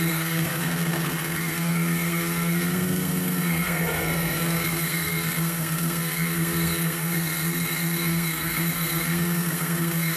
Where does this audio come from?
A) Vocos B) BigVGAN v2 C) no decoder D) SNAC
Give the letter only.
D